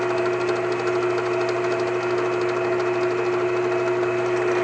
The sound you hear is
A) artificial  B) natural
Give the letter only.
B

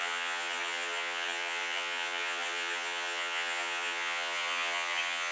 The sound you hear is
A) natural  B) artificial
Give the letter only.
B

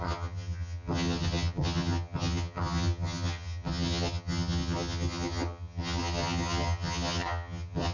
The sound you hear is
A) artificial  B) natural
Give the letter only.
A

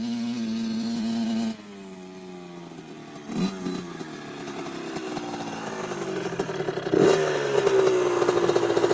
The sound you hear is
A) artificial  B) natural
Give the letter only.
B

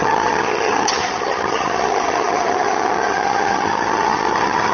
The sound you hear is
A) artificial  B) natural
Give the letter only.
A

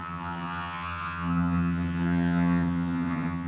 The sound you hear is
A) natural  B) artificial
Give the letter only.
B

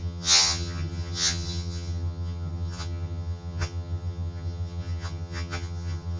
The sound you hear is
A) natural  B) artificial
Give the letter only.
B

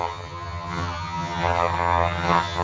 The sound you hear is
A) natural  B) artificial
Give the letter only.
B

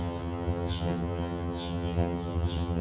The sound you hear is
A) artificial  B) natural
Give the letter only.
A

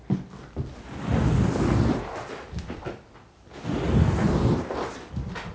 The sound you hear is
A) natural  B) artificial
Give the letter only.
A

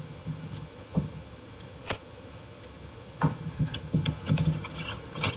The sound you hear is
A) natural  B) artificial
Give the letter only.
B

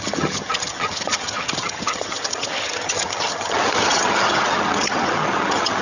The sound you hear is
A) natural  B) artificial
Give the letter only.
B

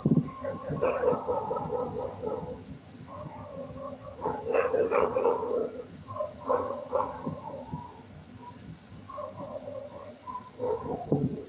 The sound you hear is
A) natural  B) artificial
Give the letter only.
B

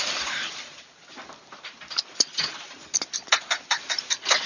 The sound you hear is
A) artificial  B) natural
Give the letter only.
B